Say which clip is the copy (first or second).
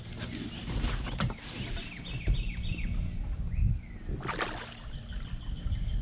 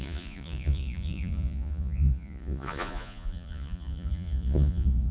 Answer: second